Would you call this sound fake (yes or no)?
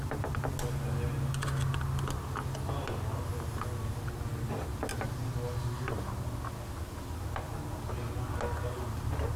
no